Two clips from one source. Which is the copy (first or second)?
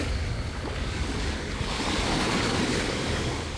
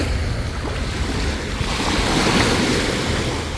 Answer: first